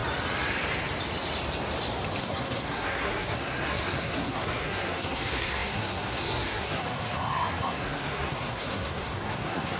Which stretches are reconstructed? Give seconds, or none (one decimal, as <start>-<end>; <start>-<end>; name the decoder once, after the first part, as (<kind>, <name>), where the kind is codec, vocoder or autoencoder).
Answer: 2.2-9.8 (codec, SNAC)